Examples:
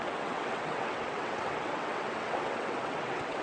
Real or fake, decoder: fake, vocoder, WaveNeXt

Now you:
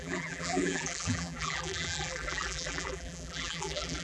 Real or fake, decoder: fake, vocoder, BigVGAN v2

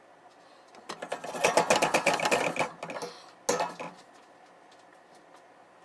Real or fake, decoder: real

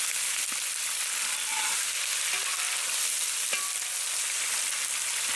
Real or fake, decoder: real